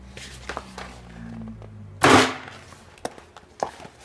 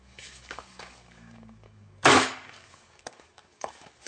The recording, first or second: first